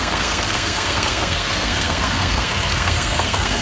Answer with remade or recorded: remade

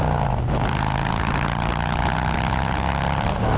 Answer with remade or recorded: recorded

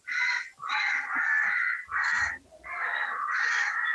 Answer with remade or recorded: recorded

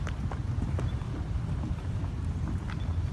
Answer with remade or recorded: recorded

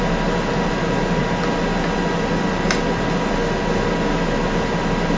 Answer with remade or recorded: recorded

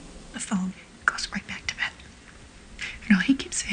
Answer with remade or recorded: recorded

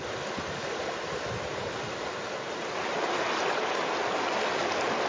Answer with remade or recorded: recorded